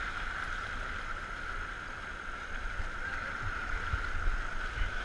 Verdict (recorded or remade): recorded